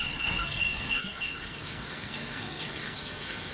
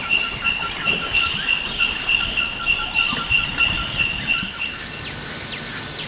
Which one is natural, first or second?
second